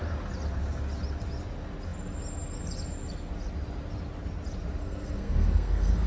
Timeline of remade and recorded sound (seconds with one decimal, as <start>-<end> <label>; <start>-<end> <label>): 0.0-4.8 recorded; 4.8-6.1 remade